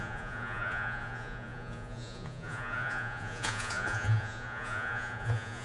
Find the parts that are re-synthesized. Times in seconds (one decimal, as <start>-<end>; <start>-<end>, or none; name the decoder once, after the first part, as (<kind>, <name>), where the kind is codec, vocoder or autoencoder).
0.0-5.6 (vocoder, Vocos)